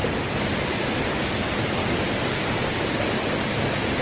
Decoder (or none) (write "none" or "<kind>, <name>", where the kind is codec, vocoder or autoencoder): none